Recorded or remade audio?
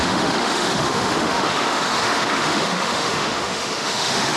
remade